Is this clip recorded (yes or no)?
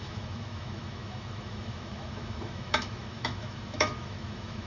no